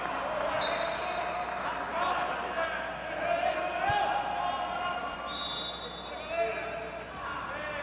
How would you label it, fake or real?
real